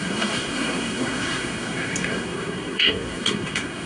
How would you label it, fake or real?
fake